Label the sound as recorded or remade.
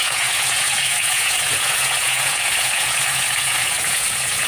remade